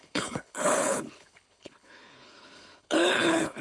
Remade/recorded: remade